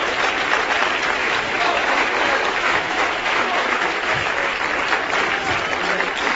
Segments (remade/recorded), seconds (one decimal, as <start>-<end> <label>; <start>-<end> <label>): 0.0-1.2 recorded; 1.2-4.5 remade; 4.5-6.4 recorded